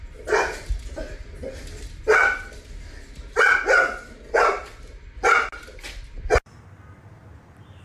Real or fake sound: real